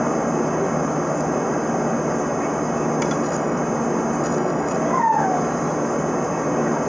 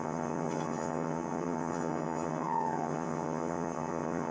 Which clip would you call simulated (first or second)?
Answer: second